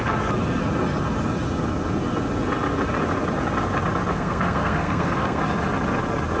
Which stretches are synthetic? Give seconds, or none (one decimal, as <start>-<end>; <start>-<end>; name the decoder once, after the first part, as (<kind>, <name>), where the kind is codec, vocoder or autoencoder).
4.1-5.4 (codec, SNAC)